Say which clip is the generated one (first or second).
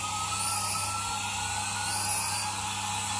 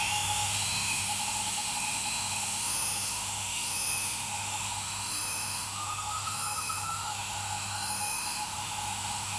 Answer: second